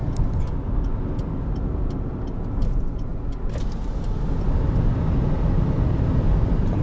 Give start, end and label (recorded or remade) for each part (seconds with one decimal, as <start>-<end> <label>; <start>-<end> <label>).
0.0-6.8 recorded